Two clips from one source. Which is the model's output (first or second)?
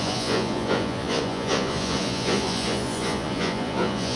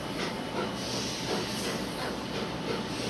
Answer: first